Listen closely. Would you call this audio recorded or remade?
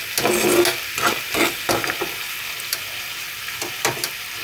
recorded